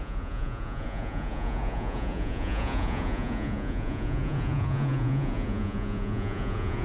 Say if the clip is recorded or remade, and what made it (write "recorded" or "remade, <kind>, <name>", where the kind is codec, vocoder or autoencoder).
remade, vocoder, Vocos